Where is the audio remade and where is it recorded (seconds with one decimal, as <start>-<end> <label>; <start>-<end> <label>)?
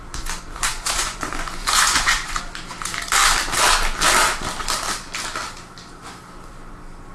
0.0-0.7 recorded; 0.7-2.4 remade; 2.4-7.1 recorded